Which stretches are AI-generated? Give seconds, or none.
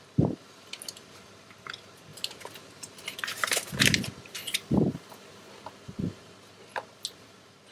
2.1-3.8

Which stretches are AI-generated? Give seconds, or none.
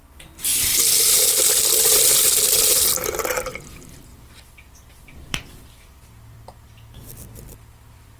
0.0-0.5; 1.7-8.2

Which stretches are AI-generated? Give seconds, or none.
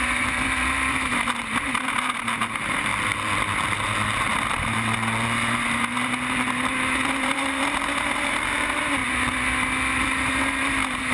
0.0-2.9; 4.5-9.0; 10.0-11.1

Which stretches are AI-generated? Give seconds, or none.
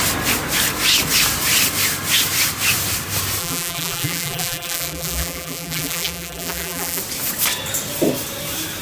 3.4-7.0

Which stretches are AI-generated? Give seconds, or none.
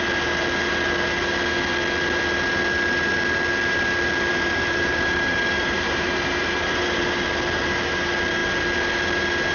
4.3-7.2